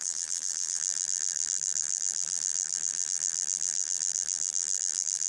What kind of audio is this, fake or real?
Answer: fake